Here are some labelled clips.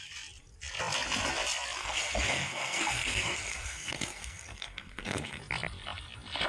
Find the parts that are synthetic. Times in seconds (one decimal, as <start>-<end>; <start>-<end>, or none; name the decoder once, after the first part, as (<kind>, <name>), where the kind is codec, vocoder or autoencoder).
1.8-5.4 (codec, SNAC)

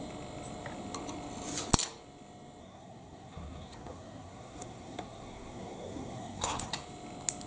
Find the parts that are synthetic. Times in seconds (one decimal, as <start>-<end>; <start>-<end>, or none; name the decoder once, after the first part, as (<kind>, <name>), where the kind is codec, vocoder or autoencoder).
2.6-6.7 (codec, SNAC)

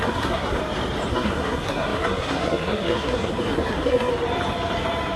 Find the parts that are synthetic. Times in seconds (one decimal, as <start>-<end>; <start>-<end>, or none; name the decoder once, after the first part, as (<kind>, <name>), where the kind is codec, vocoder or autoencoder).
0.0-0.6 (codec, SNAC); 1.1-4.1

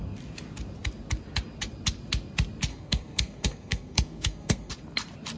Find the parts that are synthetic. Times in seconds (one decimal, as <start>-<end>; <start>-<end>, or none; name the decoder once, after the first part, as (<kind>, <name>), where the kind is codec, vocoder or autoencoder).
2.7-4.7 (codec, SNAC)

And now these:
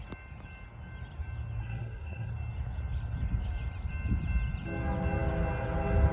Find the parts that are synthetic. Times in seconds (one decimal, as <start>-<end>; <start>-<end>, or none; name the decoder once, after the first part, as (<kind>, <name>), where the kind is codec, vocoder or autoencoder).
1.6-2.3 (codec, SNAC)

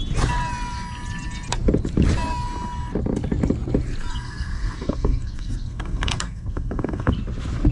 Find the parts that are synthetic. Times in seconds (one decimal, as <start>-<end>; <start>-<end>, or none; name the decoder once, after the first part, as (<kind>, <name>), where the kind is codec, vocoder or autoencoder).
4.1-7.1 (codec, SNAC)

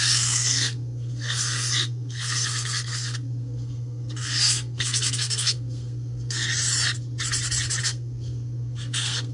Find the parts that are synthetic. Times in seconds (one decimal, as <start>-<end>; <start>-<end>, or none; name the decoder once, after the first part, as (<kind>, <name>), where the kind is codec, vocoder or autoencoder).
0.0-6.5 (codec, SNAC); 7.8-9.3

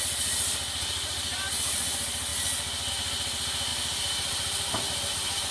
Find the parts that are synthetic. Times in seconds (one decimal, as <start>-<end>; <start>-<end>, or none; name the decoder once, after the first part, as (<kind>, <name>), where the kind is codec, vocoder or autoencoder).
none